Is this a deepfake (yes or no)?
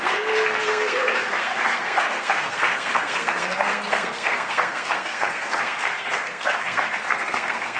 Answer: yes